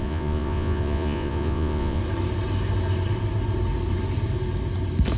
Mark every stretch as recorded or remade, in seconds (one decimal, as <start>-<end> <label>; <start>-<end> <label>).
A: 0.0-2.0 remade; 2.0-5.2 recorded